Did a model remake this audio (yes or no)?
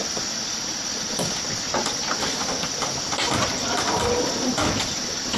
no